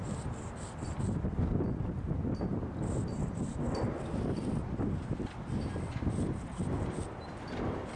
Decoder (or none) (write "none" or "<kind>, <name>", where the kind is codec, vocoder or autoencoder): none